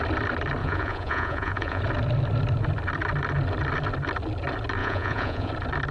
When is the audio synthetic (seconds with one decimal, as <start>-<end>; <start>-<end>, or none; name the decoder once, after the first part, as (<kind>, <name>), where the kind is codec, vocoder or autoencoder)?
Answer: 0.6-1.8 (vocoder, Vocos); 4.8-5.5